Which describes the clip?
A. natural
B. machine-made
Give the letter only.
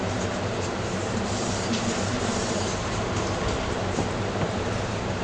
B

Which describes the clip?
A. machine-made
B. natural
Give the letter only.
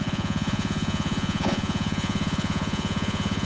A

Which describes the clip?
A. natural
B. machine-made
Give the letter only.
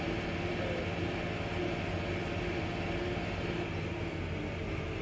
A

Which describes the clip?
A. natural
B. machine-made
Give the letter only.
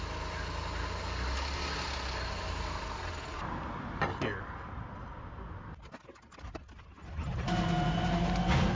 A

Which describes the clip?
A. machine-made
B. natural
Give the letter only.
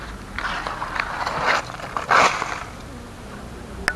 B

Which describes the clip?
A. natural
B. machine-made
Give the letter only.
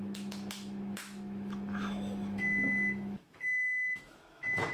B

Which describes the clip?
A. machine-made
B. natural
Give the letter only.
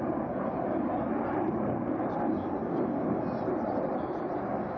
B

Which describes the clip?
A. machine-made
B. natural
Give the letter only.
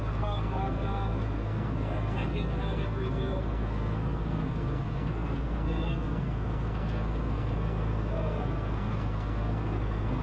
A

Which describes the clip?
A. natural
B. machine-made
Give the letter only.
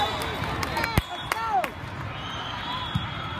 A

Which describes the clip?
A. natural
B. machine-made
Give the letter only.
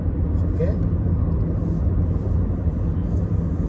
A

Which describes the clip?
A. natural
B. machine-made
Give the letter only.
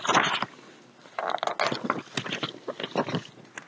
A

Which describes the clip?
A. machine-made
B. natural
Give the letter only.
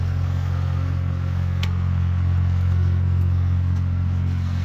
A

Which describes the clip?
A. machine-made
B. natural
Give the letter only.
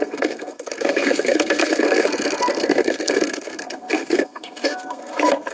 A